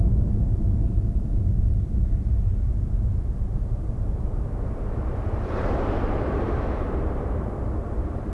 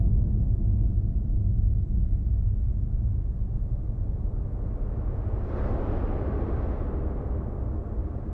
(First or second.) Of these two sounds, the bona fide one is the second